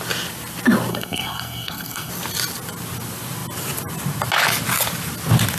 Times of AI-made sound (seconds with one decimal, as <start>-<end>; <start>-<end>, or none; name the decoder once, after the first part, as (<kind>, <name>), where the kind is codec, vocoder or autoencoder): 0.9-2.1 (codec, SNAC)